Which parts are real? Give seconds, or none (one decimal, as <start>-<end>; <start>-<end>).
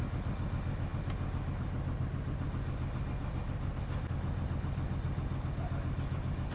0.0-6.5